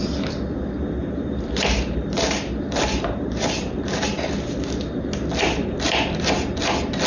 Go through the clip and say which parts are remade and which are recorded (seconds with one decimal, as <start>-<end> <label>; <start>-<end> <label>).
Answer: 0.0-1.0 recorded; 1.0-4.1 remade; 4.1-7.1 recorded